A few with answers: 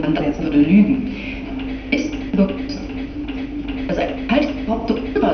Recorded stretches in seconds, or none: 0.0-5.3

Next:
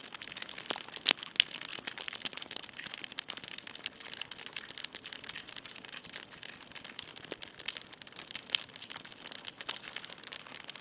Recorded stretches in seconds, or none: 0.0-1.7; 6.0-7.1; 9.4-10.8

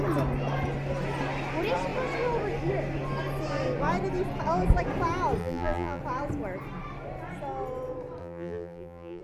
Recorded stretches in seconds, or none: 0.0-5.4; 6.0-8.2

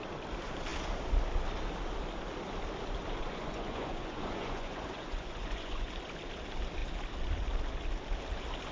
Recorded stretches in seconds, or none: 0.0-3.2; 5.9-8.7